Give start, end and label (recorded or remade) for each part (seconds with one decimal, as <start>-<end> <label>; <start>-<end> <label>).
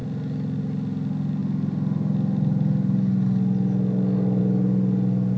0.0-5.4 recorded